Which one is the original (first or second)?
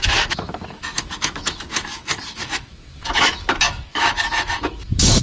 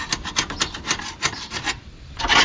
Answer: second